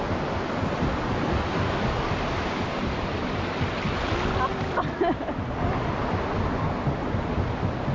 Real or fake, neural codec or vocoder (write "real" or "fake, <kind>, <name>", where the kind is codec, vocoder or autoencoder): real